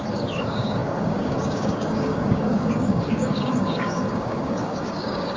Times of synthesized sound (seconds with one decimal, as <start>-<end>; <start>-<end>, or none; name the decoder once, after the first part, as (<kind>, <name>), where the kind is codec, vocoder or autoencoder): 0.0-5.4 (codec, DAC)